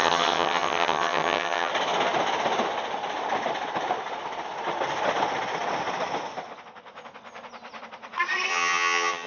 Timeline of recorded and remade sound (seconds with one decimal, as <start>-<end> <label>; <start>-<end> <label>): 0.0-1.7 remade; 1.7-8.5 recorded; 8.5-9.3 remade

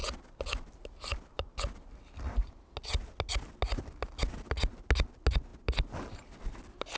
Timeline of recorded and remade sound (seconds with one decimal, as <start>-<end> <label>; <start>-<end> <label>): 0.0-7.0 recorded

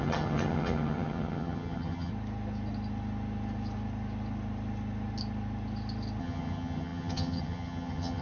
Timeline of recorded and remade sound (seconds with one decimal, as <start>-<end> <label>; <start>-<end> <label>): 0.0-2.1 remade; 2.1-6.2 recorded; 6.2-8.2 remade

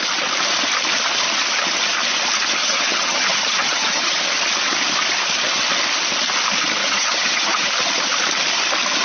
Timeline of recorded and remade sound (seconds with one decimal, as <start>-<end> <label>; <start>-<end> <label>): 0.0-2.6 recorded; 2.6-4.2 remade; 4.2-6.8 recorded; 6.8-7.7 remade; 7.7-9.0 recorded

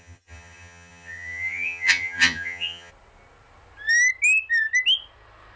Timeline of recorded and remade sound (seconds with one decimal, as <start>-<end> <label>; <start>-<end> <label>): 0.0-2.9 remade; 2.9-5.6 recorded